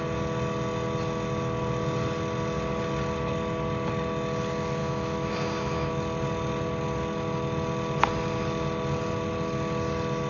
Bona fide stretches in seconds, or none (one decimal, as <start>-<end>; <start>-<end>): 0.0-4.8; 5.9-10.3